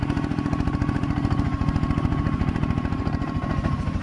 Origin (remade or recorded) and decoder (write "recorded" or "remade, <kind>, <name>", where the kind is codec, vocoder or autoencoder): recorded